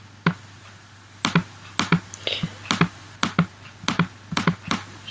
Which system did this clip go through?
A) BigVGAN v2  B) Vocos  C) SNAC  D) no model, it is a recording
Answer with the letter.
D